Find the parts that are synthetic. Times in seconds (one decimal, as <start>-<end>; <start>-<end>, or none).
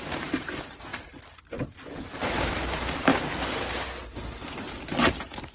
0.0-0.9; 1.4-3.1; 5.0-5.5